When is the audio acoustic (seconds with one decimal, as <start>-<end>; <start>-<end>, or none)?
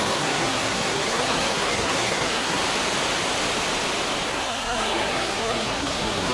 2.6-4.3